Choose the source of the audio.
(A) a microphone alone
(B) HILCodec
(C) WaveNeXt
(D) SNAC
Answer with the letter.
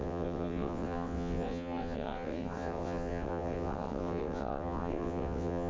C